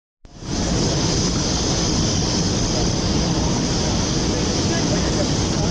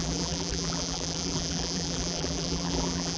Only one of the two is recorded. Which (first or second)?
first